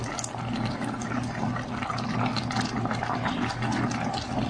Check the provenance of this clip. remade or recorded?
recorded